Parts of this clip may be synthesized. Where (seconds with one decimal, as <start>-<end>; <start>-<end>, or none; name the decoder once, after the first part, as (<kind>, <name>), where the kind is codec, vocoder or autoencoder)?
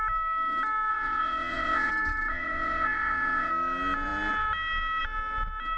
0.9-1.9 (vocoder, WaveNeXt); 2.3-3.5